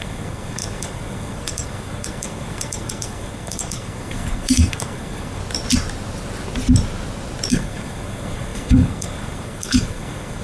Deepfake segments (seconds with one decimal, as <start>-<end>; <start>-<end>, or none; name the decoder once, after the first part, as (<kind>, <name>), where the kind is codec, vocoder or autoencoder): 0.0-5.4 (codec, SNAC); 7.5-10.4